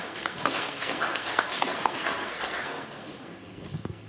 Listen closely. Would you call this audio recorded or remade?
remade